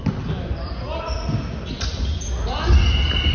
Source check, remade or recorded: recorded